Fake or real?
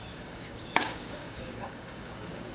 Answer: fake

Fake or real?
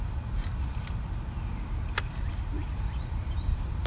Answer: real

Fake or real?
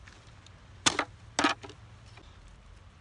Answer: real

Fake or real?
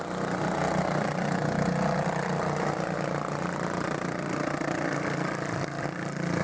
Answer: real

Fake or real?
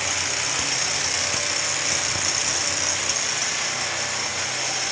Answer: real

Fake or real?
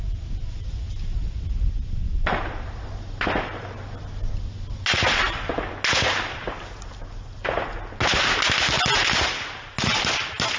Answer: real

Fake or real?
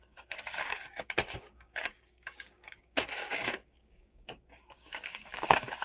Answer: fake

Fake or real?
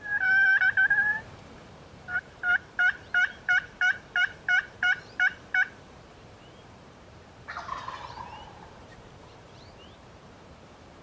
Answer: fake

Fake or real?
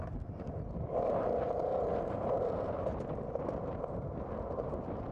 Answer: real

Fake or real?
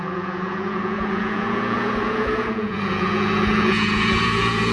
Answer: fake